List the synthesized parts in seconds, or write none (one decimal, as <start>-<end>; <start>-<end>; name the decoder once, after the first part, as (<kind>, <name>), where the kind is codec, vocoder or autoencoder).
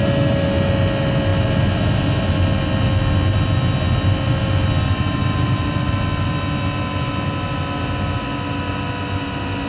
none